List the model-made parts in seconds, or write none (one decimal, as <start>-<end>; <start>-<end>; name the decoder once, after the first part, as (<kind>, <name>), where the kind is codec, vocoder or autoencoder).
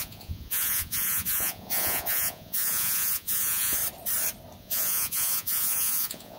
0.0-3.8 (vocoder, Vocos); 4.6-6.4